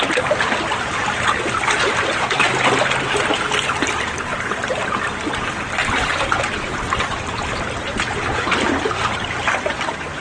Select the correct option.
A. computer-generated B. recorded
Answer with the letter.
B